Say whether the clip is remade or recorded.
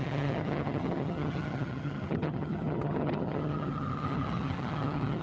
remade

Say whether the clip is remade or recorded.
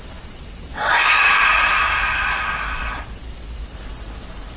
recorded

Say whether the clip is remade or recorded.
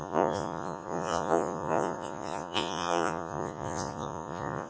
remade